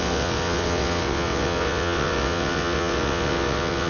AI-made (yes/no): yes